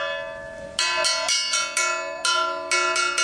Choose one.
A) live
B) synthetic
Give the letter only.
A